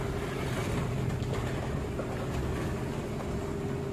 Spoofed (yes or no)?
no